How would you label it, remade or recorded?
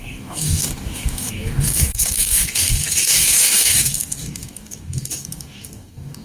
remade